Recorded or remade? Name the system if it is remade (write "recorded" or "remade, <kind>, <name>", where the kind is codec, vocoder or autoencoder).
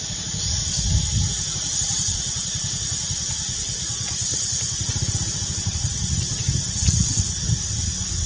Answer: recorded